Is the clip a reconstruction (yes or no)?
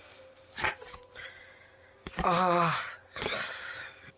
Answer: no